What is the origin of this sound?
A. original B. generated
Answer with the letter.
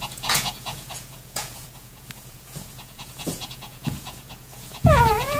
B